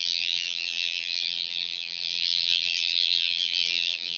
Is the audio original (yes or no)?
no